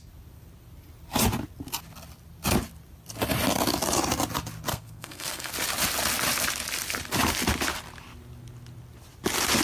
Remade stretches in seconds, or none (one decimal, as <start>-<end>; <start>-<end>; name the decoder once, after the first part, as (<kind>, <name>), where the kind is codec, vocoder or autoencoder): 4.7-5.5 (codec, SNAC)